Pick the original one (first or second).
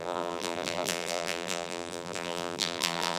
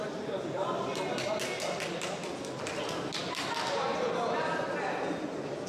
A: second